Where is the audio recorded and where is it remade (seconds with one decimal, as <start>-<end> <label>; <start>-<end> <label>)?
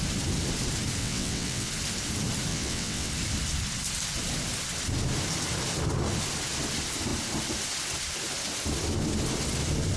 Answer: 0.0-1.0 recorded; 1.0-1.7 remade; 1.7-2.5 recorded; 2.5-3.1 remade; 3.1-10.0 recorded